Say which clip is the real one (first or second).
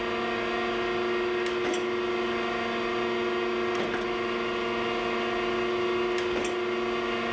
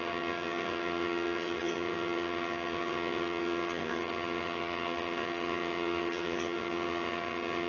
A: first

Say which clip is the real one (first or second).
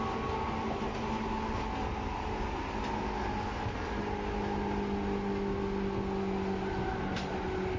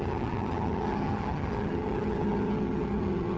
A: first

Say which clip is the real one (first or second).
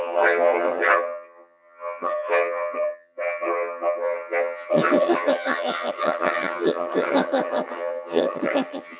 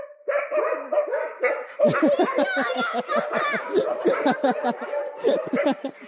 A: second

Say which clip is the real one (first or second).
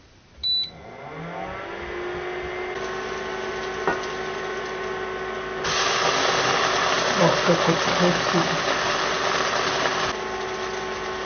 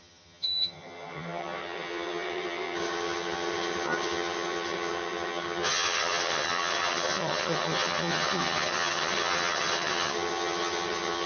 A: first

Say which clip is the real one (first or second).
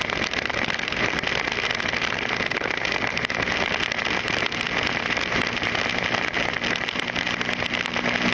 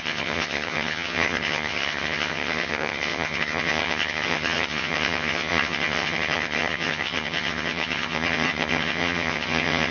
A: first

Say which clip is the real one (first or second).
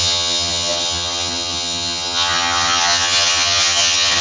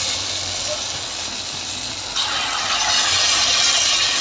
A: second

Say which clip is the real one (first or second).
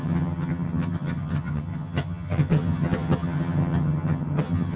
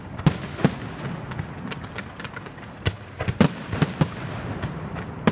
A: second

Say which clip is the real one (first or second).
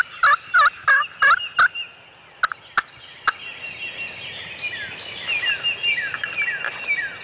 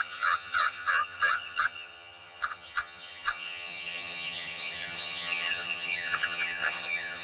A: first